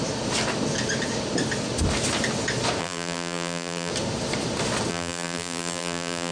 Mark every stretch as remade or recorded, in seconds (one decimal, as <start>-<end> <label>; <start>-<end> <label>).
0.0-2.8 recorded; 2.8-3.9 remade; 3.9-4.9 recorded; 4.9-6.3 remade